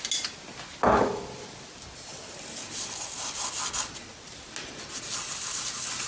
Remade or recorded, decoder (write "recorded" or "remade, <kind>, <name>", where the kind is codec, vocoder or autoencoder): recorded